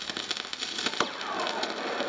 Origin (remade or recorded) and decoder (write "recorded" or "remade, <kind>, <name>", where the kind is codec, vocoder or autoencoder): recorded